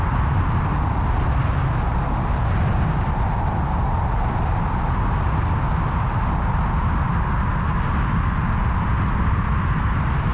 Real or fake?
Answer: real